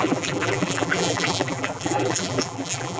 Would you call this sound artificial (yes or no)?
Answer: yes